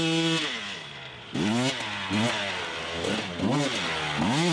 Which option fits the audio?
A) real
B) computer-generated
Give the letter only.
A